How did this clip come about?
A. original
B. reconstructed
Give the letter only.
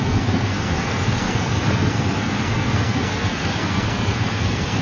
B